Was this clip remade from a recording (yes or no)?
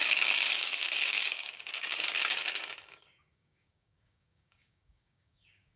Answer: yes